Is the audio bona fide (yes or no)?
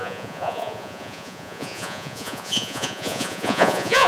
no